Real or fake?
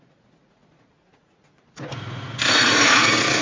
fake